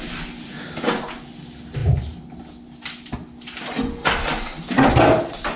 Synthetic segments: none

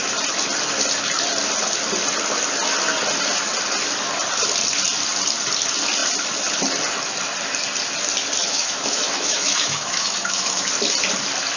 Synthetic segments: 8.4-10.7

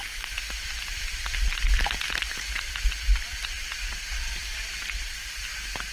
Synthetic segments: none

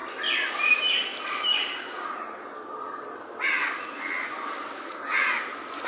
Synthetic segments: none

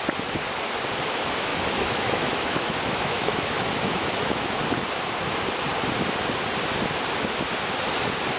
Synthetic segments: 1.5-4.5

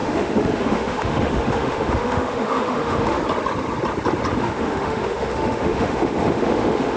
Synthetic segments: 0.0-3.2; 4.4-7.0